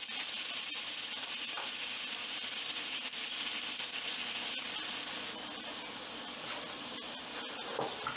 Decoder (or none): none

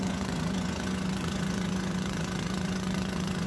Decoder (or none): vocoder, Vocos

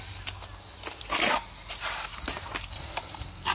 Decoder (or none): none